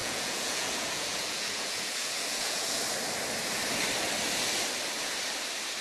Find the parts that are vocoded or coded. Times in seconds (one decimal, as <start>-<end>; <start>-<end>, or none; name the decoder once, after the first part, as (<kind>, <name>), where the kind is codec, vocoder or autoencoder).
0.0-2.8 (vocoder, Vocos)